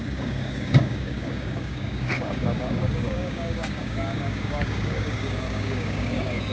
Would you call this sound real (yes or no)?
no